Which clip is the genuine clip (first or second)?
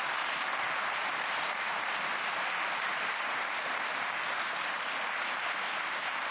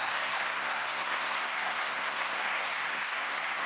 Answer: first